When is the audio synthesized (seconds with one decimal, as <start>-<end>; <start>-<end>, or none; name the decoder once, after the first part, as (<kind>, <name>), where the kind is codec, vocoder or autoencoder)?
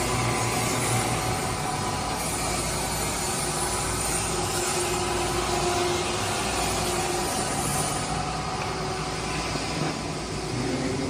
none